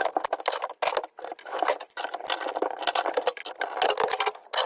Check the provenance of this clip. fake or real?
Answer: real